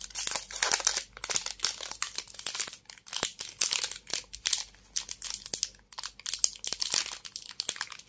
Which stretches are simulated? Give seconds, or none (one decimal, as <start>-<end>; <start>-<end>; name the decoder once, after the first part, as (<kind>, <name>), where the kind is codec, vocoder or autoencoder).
none